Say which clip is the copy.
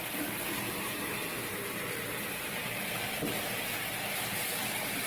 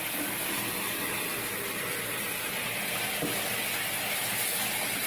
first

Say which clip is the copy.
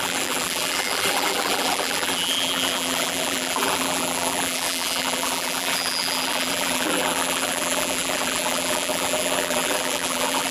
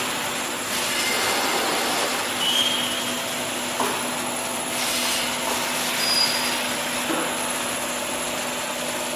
first